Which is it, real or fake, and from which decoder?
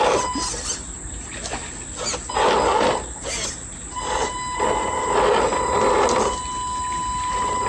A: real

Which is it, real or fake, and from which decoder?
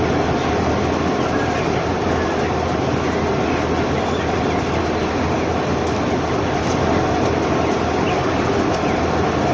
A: real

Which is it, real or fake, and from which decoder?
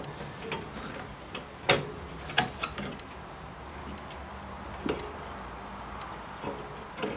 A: real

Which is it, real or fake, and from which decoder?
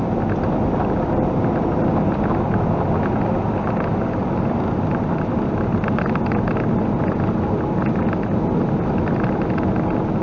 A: real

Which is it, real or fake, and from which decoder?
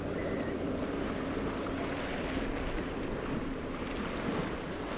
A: real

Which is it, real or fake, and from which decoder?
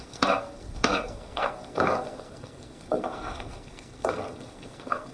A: fake, codec, SNAC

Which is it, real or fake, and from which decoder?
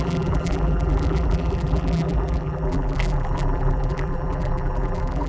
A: fake, vocoder, BigVGAN v2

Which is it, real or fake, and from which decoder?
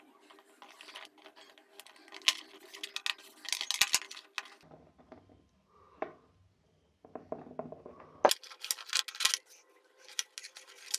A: real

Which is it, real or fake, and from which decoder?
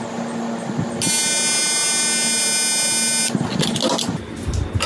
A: real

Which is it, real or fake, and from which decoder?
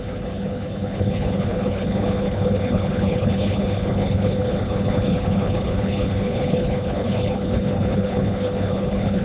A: fake, codec, HILCodec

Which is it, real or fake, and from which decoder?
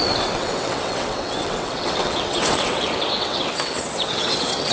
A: fake, vocoder, WaveNeXt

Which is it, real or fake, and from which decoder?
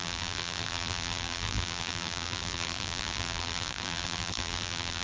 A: fake, vocoder, BigVGAN v2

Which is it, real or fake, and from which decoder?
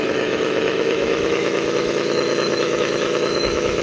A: fake, autoencoder, DAC-VAE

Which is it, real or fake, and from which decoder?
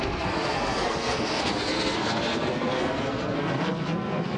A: fake, codec, SNAC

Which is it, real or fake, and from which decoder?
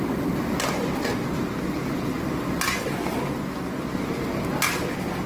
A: real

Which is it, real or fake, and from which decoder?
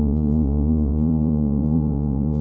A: fake, vocoder, Vocos